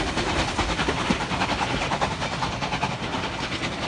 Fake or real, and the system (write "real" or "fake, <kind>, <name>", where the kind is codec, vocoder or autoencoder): real